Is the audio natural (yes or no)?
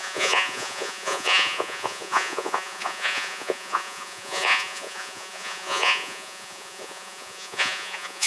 no